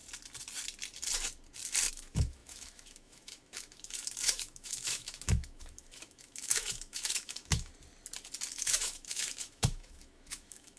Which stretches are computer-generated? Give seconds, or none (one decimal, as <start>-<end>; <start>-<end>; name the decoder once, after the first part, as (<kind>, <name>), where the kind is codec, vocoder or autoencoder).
1.9-7.7 (autoencoder, DAC-VAE); 8.5-10.8